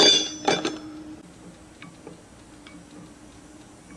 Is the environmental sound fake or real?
real